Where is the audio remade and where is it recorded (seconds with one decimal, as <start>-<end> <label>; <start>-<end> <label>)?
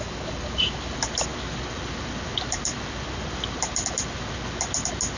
0.0-5.2 recorded